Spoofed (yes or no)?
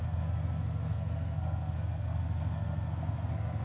yes